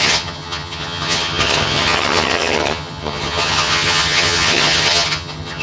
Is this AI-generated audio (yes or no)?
yes